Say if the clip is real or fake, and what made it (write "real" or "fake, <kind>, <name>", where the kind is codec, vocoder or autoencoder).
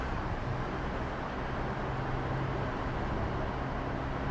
real